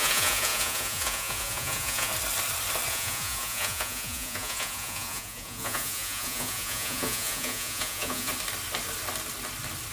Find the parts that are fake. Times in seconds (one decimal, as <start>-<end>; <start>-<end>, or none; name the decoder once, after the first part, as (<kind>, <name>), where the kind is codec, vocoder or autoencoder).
0.0-2.1 (vocoder, Vocos); 2.9-8.3